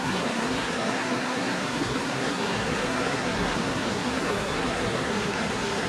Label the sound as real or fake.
fake